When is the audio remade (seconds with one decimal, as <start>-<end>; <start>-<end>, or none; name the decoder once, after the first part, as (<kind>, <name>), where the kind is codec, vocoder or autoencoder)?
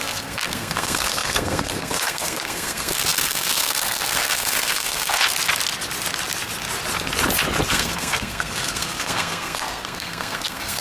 0.0-5.2 (codec, SNAC); 7.7-10.8